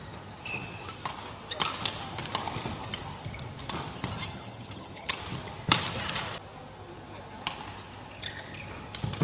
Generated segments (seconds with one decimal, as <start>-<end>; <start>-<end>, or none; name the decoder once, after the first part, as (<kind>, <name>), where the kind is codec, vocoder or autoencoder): 4.3-5.2 (vocoder, HiFi-GAN)